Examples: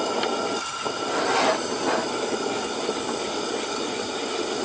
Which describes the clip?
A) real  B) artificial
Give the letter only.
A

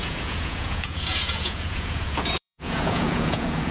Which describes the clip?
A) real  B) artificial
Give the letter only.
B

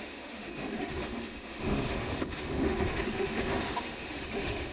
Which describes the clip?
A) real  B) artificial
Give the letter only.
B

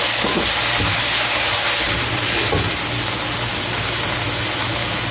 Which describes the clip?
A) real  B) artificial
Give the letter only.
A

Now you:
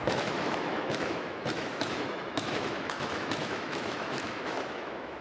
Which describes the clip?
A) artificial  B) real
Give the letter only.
A